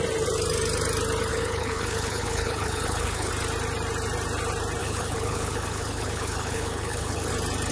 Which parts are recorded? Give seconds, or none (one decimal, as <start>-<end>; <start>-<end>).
0.0-1.3; 3.3-4.8; 7.3-7.7